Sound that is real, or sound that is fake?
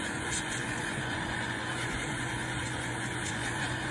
fake